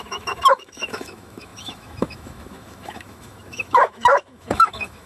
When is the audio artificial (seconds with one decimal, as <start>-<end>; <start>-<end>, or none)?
0.0-5.1